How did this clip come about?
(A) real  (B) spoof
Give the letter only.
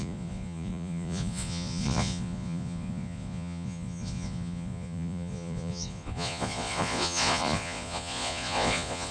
B